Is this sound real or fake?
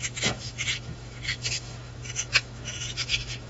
fake